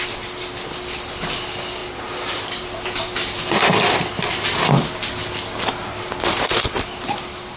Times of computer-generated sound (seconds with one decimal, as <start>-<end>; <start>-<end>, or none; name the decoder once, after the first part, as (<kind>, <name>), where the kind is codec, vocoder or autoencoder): none